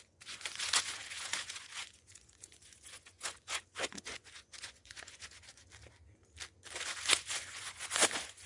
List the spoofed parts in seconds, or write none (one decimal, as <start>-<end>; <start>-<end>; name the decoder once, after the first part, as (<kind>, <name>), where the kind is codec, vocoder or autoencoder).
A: 0.0-5.6 (vocoder, Vocos); 6.7-8.5